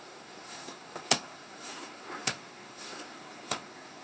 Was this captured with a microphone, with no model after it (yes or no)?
no